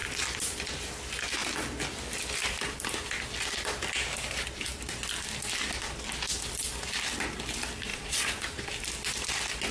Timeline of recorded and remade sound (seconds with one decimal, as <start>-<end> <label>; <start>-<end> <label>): 0.0-7.9 recorded; 7.9-8.7 remade; 8.7-9.7 recorded